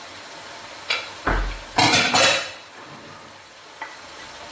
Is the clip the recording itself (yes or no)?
yes